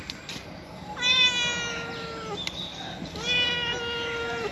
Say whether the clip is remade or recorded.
recorded